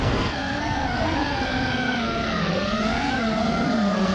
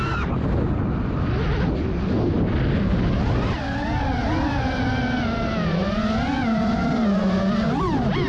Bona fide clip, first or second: second